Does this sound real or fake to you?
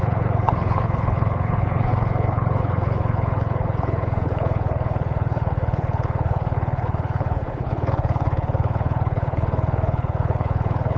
fake